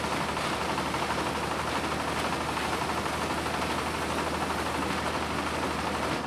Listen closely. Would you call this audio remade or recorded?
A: recorded